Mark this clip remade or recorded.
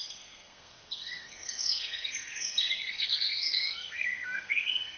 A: remade